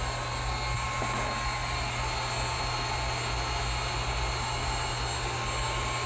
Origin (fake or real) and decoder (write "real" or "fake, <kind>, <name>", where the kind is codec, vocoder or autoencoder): real